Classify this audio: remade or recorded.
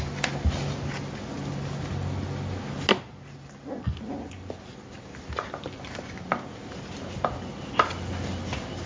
recorded